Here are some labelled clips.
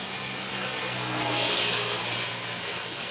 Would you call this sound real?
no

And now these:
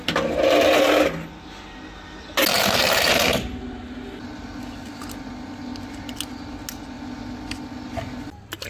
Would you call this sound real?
yes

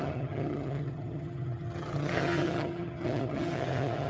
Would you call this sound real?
no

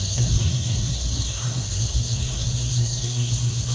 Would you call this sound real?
no